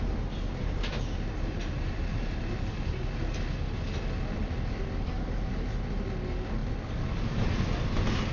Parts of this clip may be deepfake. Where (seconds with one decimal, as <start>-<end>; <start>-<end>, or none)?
none